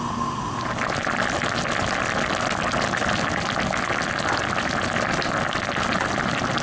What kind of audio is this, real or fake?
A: real